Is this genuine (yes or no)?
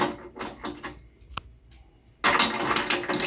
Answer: yes